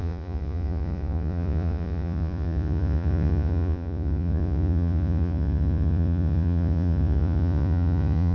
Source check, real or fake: fake